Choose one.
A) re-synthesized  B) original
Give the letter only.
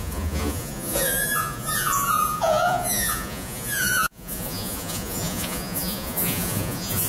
A